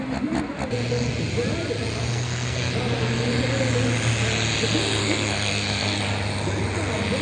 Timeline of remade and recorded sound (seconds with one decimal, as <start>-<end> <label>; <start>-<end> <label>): 0.0-2.1 recorded; 2.1-2.7 remade; 2.7-5.0 recorded; 5.0-6.0 remade; 6.0-7.2 recorded